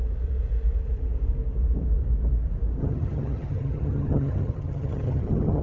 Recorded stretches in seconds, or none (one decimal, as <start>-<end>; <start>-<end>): 0.0-2.8